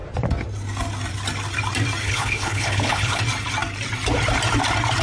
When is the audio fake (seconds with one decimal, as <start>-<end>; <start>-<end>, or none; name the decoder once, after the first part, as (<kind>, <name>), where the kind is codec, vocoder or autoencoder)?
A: 2.0-3.2 (codec, HILCodec)